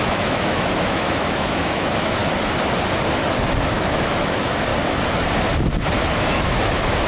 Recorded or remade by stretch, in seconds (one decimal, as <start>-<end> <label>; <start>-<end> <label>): 0.0-2.2 remade; 2.2-3.7 recorded; 3.7-4.7 remade; 4.7-6.1 recorded; 6.1-7.1 remade